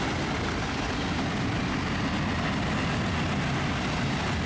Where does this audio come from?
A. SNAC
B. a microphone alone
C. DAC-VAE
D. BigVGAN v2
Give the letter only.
B